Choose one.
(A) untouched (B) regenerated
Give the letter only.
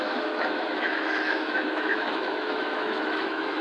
B